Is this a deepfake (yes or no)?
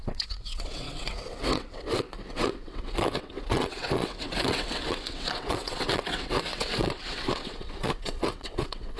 yes